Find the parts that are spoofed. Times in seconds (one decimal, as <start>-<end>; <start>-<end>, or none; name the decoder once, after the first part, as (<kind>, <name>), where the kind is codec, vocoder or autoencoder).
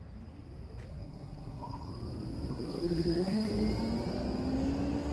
0.9-1.9 (codec, SNAC); 2.5-3.5